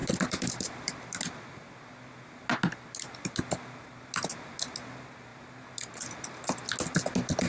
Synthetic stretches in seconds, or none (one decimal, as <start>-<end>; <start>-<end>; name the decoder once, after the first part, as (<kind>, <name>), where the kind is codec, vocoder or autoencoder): 0.0-1.4 (vocoder, BigVGAN v2)